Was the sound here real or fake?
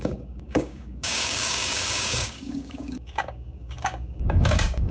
fake